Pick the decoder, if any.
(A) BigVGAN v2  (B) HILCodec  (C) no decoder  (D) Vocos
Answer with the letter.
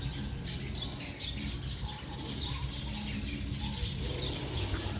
C